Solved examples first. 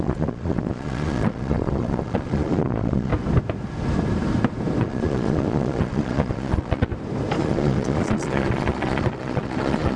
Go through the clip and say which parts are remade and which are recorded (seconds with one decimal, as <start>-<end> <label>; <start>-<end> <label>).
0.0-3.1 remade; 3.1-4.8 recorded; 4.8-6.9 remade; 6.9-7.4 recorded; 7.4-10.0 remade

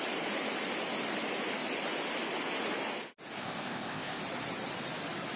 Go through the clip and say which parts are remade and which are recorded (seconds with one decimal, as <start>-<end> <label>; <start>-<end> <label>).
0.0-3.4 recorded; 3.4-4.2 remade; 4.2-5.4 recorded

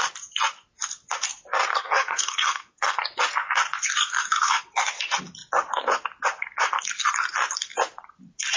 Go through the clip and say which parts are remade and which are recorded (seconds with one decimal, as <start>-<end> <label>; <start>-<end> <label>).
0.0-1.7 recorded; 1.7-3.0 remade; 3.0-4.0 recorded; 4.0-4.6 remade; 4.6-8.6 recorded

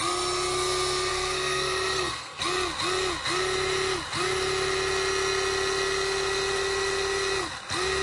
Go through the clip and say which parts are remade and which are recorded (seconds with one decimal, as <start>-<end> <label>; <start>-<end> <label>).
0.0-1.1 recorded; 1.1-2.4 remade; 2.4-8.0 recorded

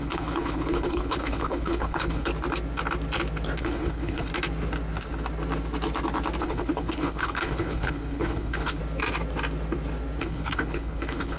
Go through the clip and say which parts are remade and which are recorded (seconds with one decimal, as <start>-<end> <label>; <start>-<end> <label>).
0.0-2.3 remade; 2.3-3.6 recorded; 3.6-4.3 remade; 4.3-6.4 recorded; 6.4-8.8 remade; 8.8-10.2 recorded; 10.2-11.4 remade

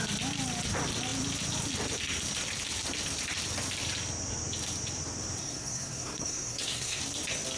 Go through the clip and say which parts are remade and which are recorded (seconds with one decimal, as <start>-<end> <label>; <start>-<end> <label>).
0.0-5.4 recorded; 5.4-7.0 remade; 7.0-7.6 recorded